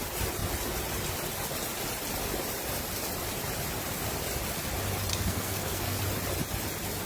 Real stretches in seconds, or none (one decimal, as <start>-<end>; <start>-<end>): 0.0-5.1; 6.0-7.1